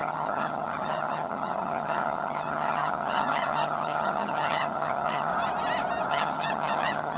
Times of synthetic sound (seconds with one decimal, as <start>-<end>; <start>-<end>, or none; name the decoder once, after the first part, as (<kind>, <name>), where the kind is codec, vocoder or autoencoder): 0.0-5.3 (vocoder, HiFi-GAN); 6.1-7.2